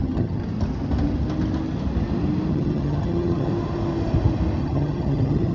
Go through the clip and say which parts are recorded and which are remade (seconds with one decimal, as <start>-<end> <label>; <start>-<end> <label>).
0.0-0.4 remade; 0.4-2.5 recorded; 2.5-3.5 remade; 3.5-4.6 recorded; 4.6-5.5 remade